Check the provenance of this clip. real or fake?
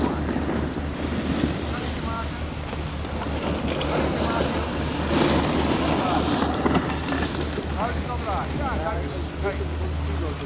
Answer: real